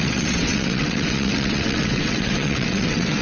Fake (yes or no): yes